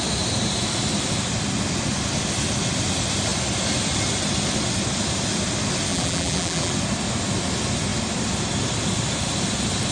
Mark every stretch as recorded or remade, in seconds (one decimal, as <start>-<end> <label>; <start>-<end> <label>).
0.0-5.9 recorded; 5.9-6.7 remade; 6.7-9.9 recorded